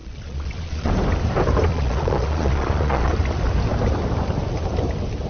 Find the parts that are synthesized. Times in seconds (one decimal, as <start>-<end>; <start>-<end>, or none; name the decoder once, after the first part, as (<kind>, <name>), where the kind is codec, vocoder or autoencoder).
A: 0.0-0.9 (vocoder, Vocos); 1.7-3.1